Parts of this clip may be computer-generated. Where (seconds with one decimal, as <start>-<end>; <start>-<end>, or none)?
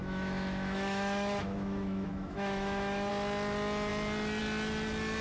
0.0-3.1